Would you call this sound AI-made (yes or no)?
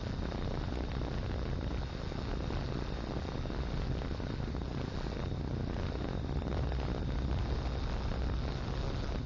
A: no